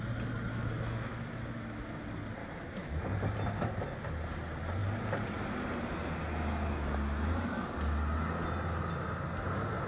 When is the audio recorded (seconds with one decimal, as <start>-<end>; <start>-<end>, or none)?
0.0-0.5; 1.8-2.4; 3.0-9.9